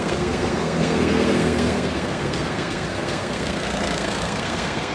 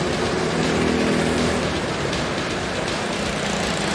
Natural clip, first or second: second